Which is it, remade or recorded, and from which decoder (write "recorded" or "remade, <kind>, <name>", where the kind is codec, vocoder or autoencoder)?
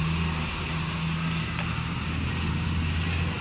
recorded